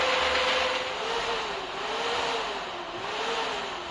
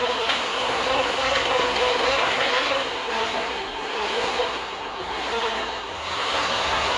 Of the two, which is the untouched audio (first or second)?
first